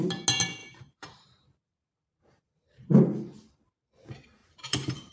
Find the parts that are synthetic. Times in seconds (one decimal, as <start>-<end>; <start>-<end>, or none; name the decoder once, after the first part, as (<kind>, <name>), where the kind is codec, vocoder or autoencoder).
0.6-3.7 (vocoder, BigVGAN v2); 4.4-5.1